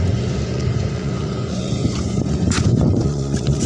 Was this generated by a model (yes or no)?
yes